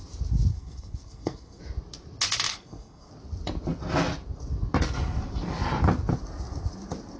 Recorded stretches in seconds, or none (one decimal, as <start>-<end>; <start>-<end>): 0.0-0.5; 1.6-2.5; 3.1-7.2